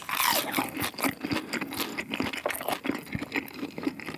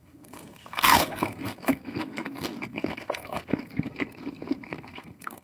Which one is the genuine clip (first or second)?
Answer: first